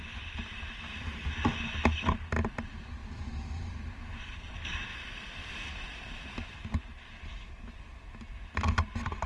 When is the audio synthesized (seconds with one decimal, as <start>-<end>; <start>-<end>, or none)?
3.0-4.2; 6.4-7.6

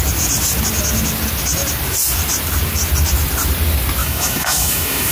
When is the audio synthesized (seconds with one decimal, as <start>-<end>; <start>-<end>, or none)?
4.0-5.1

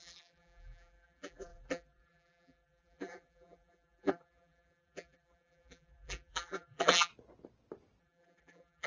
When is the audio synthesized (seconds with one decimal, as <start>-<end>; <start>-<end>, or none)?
0.0-7.1; 8.0-8.9

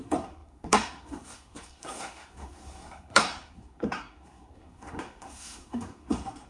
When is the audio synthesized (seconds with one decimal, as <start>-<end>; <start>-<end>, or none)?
0.0-6.5

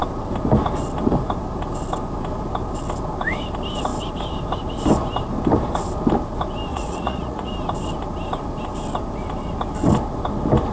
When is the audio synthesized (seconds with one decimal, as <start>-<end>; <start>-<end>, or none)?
6.7-7.5

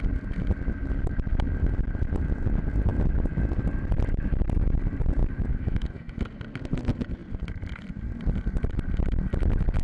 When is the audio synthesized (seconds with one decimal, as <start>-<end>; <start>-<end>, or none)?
5.2-6.2